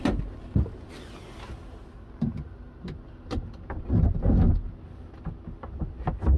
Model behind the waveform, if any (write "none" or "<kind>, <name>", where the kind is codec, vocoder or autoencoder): none